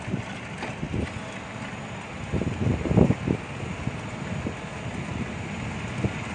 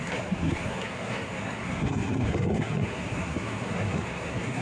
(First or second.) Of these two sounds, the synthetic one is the second